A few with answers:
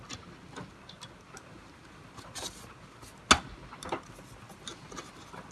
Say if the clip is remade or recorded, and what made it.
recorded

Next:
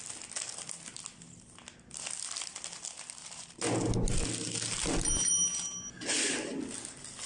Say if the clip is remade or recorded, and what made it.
recorded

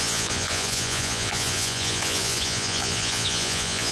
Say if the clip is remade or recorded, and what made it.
remade, vocoder, Vocos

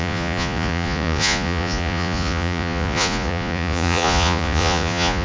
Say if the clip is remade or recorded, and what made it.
remade, vocoder, Vocos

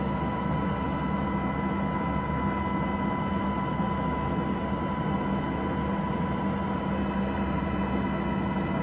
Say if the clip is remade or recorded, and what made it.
recorded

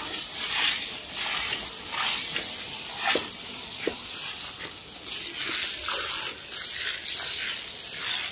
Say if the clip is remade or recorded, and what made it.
recorded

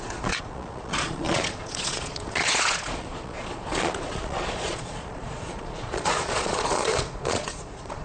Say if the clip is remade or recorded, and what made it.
remade, vocoder, Vocos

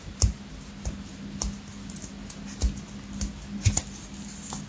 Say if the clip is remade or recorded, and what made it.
recorded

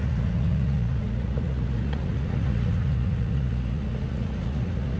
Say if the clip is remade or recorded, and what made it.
remade, vocoder, Vocos